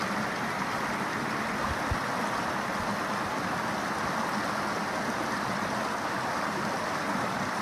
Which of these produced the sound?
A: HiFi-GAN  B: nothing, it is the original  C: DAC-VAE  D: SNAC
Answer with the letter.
B